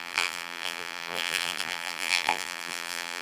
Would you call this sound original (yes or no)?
no